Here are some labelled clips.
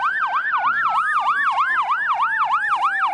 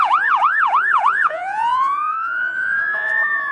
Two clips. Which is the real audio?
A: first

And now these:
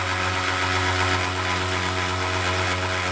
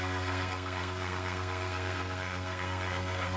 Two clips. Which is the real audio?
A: first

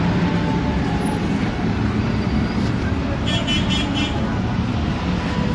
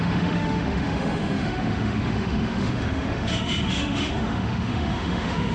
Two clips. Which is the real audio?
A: first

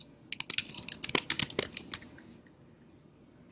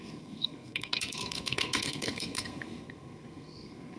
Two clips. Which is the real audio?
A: first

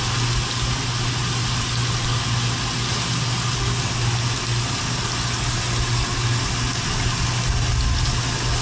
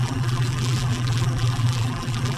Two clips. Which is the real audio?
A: first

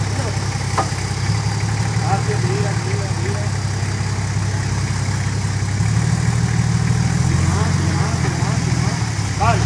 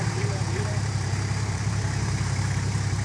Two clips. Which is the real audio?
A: first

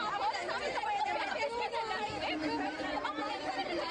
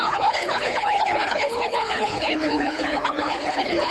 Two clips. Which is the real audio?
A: first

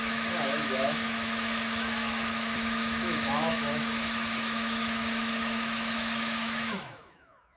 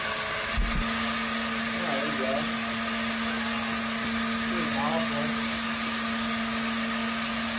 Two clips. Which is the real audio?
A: second